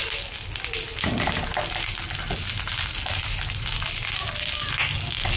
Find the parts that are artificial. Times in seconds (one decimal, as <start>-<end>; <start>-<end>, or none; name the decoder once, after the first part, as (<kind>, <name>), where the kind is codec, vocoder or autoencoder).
none